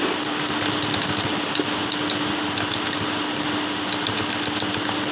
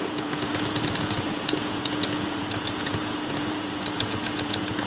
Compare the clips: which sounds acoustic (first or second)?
first